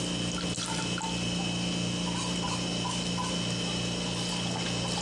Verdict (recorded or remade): recorded